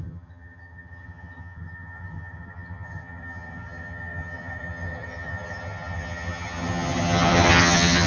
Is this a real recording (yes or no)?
no